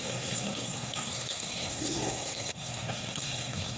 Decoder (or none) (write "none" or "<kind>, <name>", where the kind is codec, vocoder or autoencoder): codec, SNAC